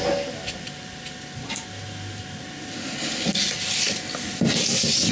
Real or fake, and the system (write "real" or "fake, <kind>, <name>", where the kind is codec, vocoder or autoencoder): real